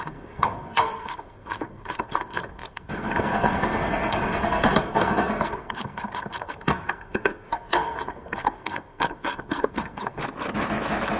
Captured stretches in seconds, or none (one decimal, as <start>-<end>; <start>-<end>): 10.2-11.2